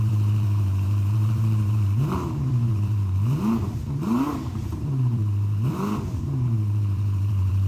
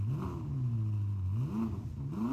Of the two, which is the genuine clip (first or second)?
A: second